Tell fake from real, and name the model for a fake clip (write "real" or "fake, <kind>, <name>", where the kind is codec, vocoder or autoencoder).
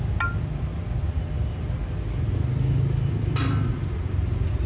real